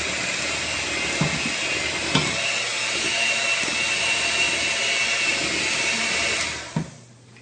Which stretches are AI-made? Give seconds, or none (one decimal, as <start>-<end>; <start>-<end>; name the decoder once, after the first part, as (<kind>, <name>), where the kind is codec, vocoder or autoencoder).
none